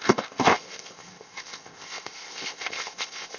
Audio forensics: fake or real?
fake